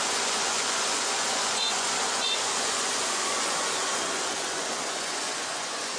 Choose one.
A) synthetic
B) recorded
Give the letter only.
A